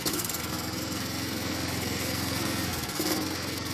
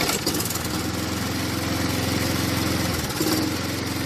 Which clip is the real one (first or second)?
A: second